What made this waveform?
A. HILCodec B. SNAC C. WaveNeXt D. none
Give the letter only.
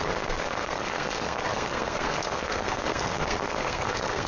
B